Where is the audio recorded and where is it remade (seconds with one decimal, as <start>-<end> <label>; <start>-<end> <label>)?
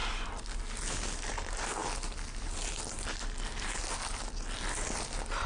0.0-5.5 recorded